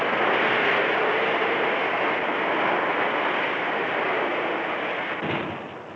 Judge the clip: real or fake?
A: real